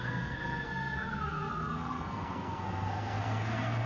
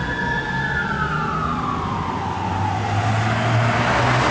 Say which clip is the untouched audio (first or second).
second